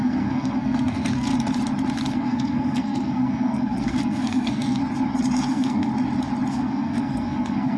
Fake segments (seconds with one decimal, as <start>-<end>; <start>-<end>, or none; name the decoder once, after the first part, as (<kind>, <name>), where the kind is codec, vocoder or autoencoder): 0.0-1.3 (codec, SNAC); 2.1-4.8; 5.5-5.9; 6.5-7.8